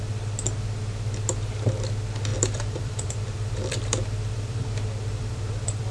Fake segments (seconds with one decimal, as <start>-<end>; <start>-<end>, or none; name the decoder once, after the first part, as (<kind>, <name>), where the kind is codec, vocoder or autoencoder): 2.3-4.6 (vocoder, BigVGAN v2); 5.1-5.9